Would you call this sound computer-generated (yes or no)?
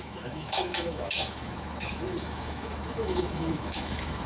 yes